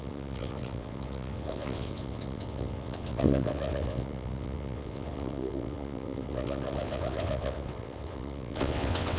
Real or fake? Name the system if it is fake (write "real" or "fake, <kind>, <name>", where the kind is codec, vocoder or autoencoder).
fake, vocoder, WaveNeXt